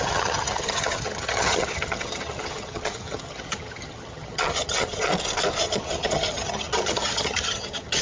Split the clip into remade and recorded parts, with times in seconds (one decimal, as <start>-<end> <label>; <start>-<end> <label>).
0.0-5.1 remade; 5.1-5.6 recorded; 5.6-8.0 remade

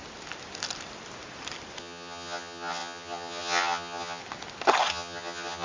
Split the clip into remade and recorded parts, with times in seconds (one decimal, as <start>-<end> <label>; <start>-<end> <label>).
0.0-1.8 recorded; 1.8-4.2 remade; 4.2-4.9 recorded; 4.9-5.6 remade

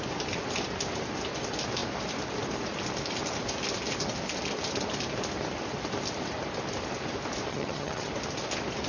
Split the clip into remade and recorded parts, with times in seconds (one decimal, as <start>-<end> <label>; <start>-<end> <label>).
0.0-7.5 recorded; 7.5-8.1 remade; 8.1-8.9 recorded

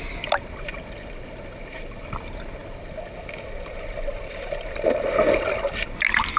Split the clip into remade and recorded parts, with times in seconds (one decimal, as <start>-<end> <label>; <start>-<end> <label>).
0.0-6.4 recorded

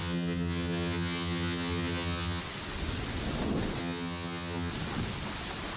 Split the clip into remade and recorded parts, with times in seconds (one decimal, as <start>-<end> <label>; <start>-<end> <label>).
0.0-2.4 remade; 2.4-3.8 recorded; 3.8-4.7 remade; 4.7-5.8 recorded

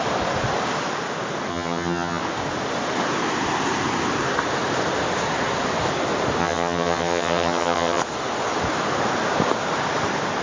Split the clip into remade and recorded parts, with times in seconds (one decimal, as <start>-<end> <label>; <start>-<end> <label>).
0.0-1.5 recorded; 1.5-2.2 remade; 2.2-6.4 recorded; 6.4-8.0 remade; 8.0-10.4 recorded

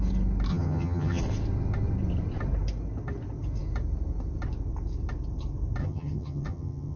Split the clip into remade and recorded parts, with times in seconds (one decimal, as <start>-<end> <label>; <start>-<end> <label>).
0.0-0.5 recorded; 0.5-1.2 remade; 1.2-5.8 recorded; 5.8-7.0 remade